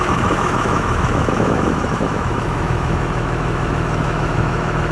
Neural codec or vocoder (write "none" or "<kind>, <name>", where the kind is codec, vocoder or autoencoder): autoencoder, DAC-VAE